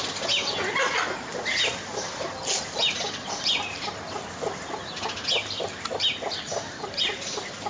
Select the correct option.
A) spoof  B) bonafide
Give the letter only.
B